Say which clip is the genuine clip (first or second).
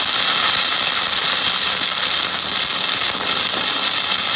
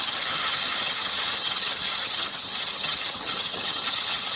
first